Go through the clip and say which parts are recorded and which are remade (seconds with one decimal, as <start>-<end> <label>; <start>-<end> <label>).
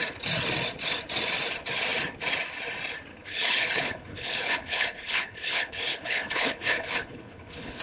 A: 0.0-3.1 recorded; 3.1-7.8 remade